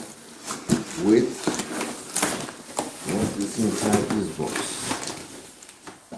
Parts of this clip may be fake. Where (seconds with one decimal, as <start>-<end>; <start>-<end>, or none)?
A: 3.2-4.5; 5.2-6.2